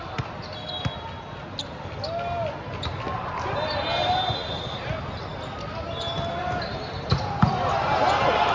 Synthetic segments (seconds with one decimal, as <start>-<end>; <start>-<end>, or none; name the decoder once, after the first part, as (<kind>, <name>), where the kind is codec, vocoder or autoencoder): none